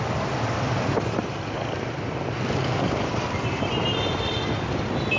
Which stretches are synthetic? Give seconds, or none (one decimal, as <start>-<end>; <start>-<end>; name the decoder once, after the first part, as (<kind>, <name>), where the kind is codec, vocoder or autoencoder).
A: none